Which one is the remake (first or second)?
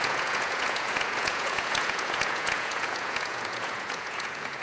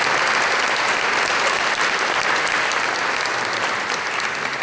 first